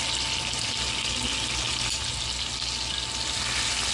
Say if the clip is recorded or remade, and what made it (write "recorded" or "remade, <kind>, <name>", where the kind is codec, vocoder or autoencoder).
recorded